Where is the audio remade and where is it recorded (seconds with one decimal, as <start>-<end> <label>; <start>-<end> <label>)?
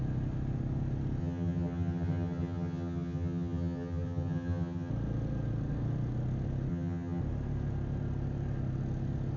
0.0-1.2 recorded; 1.2-4.9 remade; 4.9-6.7 recorded; 6.7-7.2 remade; 7.2-9.4 recorded